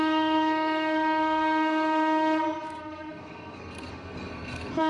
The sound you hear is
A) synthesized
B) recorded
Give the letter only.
A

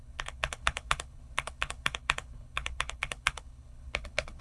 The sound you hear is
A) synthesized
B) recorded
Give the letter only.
A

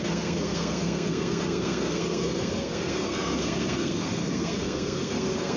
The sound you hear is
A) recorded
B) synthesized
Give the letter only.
B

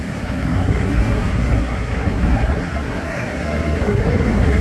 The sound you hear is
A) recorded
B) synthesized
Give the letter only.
B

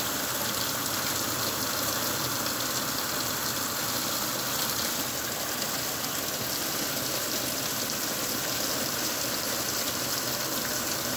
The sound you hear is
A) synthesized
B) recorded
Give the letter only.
B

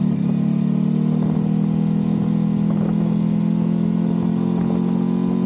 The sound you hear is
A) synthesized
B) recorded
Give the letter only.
B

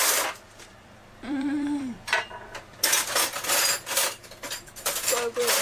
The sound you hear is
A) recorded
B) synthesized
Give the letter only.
B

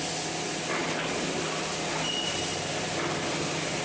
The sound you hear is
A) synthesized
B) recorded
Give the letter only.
B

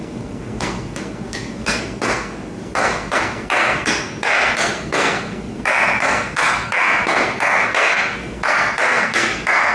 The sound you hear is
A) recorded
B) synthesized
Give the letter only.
B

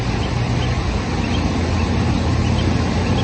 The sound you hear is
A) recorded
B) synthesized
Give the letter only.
A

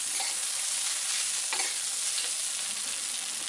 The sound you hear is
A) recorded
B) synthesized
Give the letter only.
A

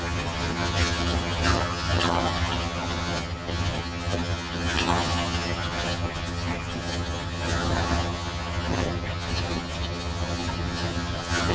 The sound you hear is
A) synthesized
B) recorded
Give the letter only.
A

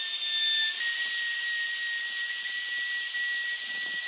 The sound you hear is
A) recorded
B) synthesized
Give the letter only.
A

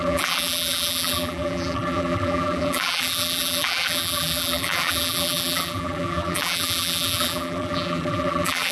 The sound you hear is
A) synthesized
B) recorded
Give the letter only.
A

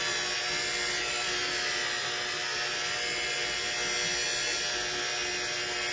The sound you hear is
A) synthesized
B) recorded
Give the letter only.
B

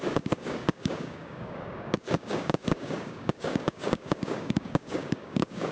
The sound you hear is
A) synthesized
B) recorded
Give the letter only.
A